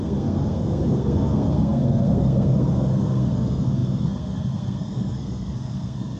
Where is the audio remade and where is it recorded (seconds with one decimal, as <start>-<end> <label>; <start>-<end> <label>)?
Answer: 0.0-6.2 remade